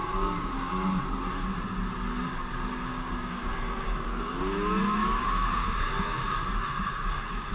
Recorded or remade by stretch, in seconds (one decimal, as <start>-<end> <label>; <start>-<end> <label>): 0.0-0.5 remade; 0.5-2.9 recorded; 2.9-7.5 remade